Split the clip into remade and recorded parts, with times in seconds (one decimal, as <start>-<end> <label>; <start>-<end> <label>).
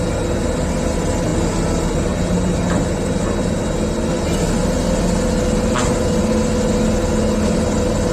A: 0.0-8.1 recorded